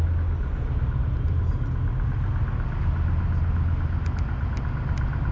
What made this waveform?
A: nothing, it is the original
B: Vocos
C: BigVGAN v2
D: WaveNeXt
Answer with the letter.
A